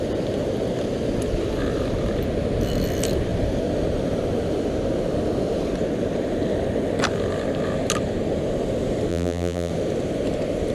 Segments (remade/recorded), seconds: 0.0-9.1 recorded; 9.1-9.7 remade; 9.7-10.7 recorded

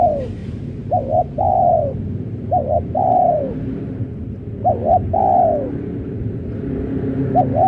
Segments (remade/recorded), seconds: 0.0-0.4 recorded; 0.4-4.0 remade; 4.0-7.7 recorded

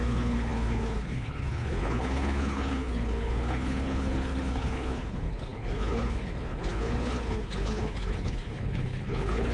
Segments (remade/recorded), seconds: 0.0-9.5 remade

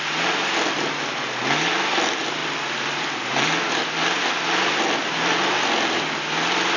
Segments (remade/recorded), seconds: 0.0-6.8 remade

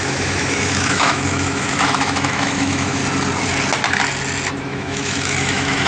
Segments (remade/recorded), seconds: 0.0-3.0 remade; 3.0-4.6 recorded; 4.6-5.9 remade

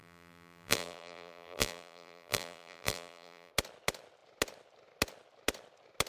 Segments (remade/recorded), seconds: 0.0-3.5 remade; 3.5-6.1 recorded

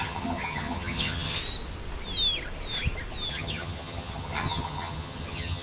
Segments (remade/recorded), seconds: 0.0-1.4 remade; 1.4-3.3 recorded; 3.3-5.6 remade

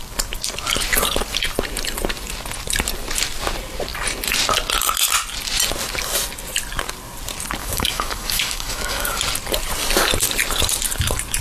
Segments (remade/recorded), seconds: 0.0-7.6 recorded; 7.6-9.2 remade; 9.2-11.4 recorded